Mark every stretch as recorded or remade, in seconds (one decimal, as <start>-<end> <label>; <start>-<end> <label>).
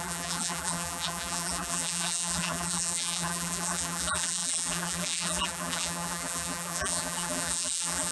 0.0-8.1 remade